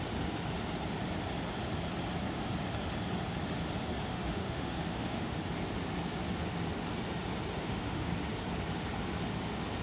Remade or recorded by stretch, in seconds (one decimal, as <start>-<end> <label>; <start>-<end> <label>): 0.0-4.1 recorded; 4.1-5.4 remade; 5.4-7.6 recorded; 7.6-8.1 remade; 8.1-9.8 recorded